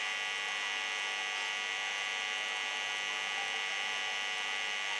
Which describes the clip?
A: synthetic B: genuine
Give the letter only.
B